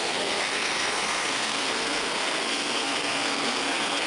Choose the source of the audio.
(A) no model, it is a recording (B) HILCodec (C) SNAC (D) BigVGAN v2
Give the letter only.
C